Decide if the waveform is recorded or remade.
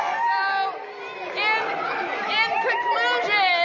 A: recorded